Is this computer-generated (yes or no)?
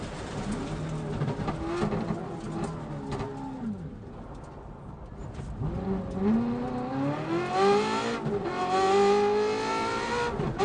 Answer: no